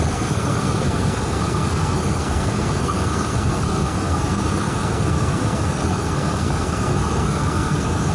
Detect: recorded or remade remade